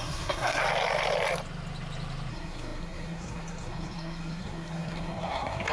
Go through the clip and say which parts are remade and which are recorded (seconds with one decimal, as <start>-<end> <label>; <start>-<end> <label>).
0.0-0.6 remade; 0.6-2.3 recorded; 2.3-5.7 remade